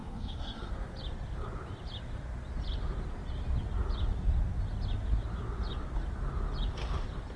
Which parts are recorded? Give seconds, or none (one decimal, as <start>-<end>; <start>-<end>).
0.7-7.4